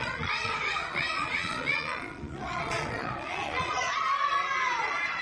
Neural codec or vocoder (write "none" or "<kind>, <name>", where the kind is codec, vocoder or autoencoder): vocoder, Vocos